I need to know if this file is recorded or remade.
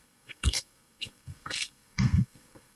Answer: remade